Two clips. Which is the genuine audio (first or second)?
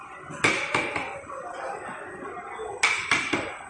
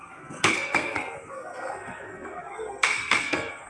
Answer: first